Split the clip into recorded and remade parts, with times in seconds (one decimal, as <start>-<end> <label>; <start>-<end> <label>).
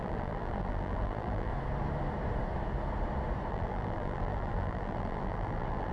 0.0-1.5 remade; 1.5-3.5 recorded; 3.5-5.9 remade